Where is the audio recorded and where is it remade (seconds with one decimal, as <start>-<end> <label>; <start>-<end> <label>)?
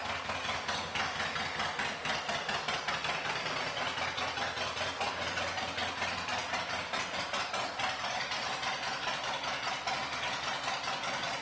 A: 0.0-11.4 recorded